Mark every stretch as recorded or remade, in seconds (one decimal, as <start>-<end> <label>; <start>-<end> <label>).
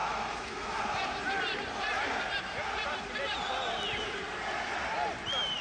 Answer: 0.0-0.8 remade; 0.8-5.6 recorded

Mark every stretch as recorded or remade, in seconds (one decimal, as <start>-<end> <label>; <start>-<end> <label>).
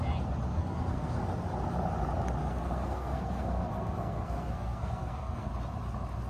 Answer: 0.0-0.5 recorded; 0.5-1.2 remade; 1.2-2.4 recorded; 2.4-5.5 remade; 5.5-6.3 recorded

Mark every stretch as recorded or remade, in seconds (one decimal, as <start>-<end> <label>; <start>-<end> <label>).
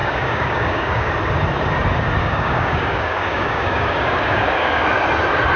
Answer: 0.0-1.1 remade; 1.1-2.2 recorded; 2.2-4.8 remade; 4.8-5.6 recorded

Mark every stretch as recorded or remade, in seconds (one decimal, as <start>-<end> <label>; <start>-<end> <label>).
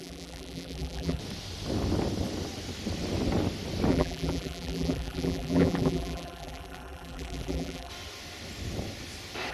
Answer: 0.0-1.2 remade; 1.2-3.9 recorded; 3.9-7.9 remade; 7.9-9.5 recorded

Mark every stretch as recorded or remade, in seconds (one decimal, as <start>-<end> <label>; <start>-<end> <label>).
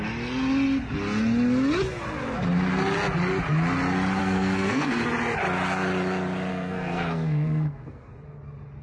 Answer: 0.0-4.2 recorded; 4.2-5.0 remade; 5.0-6.5 recorded; 6.5-8.1 remade; 8.1-8.8 recorded